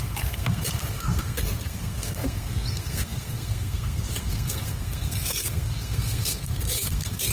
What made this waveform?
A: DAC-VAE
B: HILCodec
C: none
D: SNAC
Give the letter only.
D